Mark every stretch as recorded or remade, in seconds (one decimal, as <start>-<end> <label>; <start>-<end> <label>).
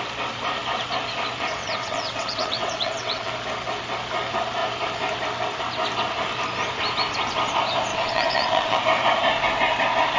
0.0-1.6 recorded; 1.6-3.3 remade; 3.3-7.9 recorded; 7.9-8.8 remade; 8.8-10.2 recorded